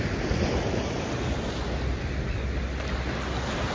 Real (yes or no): yes